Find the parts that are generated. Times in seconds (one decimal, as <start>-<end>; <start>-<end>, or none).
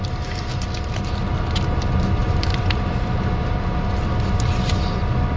2.2-3.3